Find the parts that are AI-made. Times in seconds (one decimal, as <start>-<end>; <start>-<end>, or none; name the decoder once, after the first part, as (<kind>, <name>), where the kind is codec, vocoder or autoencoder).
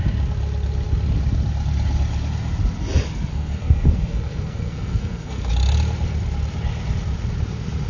3.3-5.5 (codec, SNAC)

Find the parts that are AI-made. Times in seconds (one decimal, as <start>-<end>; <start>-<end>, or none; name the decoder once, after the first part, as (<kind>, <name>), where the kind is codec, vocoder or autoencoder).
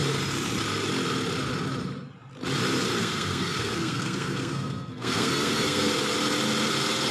3.0-5.9 (codec, SNAC)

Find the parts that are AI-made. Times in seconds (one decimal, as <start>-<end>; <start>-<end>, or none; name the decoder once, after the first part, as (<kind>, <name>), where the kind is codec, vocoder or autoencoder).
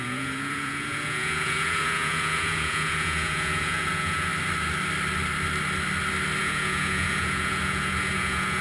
0.0-4.3 (vocoder, Vocos); 6.4-8.6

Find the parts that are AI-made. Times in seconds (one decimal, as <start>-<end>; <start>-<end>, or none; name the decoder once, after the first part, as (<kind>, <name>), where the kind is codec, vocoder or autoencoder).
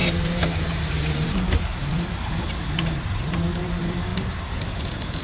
0.0-4.1 (vocoder, BigVGAN v2); 4.7-5.2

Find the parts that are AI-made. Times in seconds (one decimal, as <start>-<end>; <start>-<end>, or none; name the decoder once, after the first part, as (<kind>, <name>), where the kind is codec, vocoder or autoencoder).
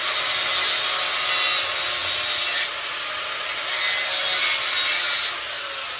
none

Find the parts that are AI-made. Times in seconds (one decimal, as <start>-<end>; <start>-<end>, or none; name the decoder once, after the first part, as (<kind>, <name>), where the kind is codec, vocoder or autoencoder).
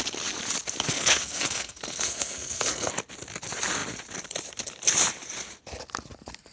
0.9-2.9 (codec, SNAC)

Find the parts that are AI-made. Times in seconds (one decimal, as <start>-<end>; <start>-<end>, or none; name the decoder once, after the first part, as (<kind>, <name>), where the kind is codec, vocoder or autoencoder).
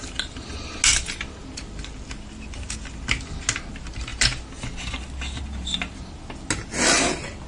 none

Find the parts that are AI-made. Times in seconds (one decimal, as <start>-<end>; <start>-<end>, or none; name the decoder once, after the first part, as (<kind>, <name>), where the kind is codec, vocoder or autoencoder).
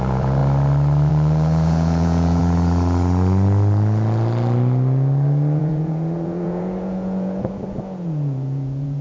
0.0-0.4 (vocoder, Vocos); 1.1-2.4; 5.6-9.0